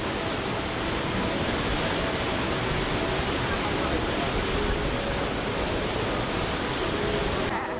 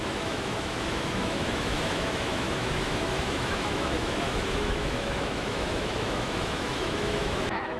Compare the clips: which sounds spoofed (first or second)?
second